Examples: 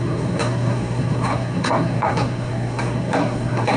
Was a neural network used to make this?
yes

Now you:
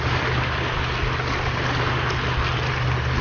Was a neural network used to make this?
no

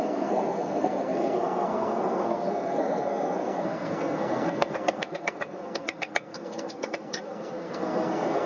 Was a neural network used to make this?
yes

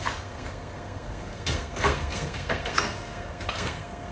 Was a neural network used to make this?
yes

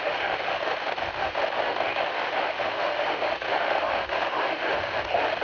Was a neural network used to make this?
yes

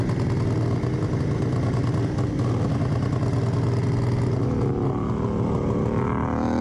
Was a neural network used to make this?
no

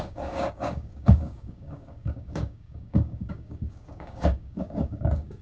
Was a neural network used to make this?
yes